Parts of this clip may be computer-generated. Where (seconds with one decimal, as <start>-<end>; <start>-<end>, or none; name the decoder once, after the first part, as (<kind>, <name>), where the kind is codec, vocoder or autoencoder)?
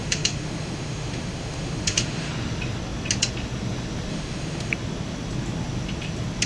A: 0.0-2.3 (autoencoder, DAC-VAE); 4.1-4.7